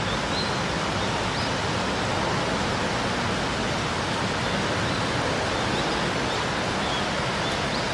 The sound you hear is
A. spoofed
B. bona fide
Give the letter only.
B